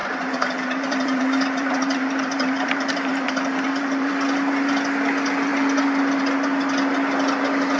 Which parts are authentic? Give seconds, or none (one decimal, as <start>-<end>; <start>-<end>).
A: 4.1-7.8